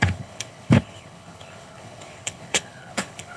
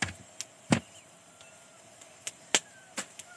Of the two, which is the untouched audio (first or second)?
second